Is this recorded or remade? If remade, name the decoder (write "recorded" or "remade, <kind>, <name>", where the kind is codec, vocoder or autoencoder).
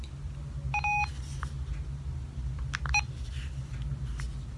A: recorded